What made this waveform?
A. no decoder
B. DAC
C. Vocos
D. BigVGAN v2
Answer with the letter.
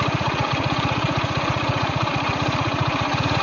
C